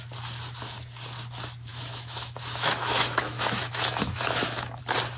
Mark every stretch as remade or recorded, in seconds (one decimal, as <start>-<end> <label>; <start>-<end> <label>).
0.0-1.7 recorded; 1.7-4.8 remade; 4.8-5.2 recorded